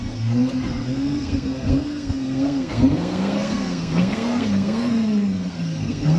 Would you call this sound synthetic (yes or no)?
yes